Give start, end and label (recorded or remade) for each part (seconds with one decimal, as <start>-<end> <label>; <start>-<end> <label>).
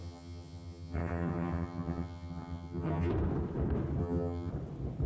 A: 0.0-3.1 remade; 3.1-4.0 recorded; 4.0-4.5 remade; 4.5-5.1 recorded